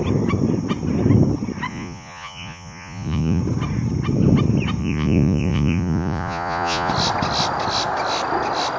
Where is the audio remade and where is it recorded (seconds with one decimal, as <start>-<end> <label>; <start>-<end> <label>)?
0.0-1.7 recorded; 1.7-3.4 remade; 3.4-4.8 recorded; 4.8-6.9 remade; 6.9-8.8 recorded